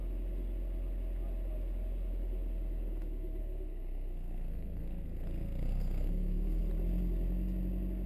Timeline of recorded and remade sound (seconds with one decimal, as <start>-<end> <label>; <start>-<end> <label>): 0.0-3.4 recorded; 3.4-6.6 remade; 6.6-8.1 recorded